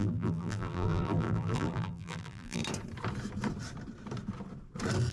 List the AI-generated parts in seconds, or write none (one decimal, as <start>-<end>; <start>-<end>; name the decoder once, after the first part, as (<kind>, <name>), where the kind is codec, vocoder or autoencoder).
0.0-2.6 (vocoder, BigVGAN v2)